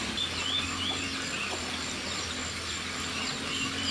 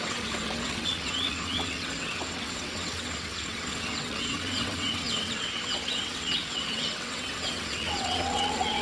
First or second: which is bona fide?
first